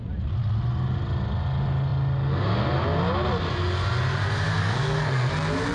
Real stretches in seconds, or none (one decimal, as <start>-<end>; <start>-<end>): 0.0-4.6; 5.3-5.7

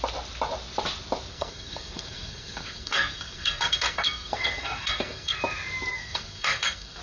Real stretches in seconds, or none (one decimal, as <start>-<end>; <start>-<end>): 0.0-1.3; 5.4-5.9

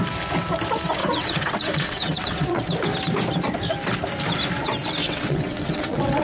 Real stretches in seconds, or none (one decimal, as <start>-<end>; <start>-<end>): 0.0-1.0; 2.6-5.0

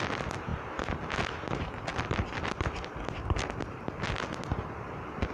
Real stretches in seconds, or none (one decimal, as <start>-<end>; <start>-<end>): 0.0-1.9; 3.8-5.3